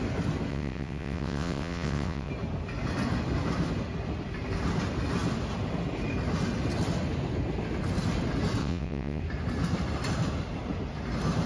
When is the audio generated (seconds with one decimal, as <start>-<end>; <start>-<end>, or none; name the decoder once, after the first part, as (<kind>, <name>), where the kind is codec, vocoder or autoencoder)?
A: 0.5-2.3 (vocoder, WaveNeXt); 8.6-9.2